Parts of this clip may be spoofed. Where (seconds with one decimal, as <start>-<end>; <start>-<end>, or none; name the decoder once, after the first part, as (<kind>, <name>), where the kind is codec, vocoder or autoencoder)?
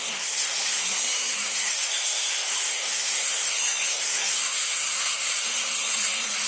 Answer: 0.0-6.5 (codec, SNAC)